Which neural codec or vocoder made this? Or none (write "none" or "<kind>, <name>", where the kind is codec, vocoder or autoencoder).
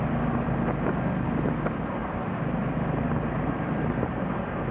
none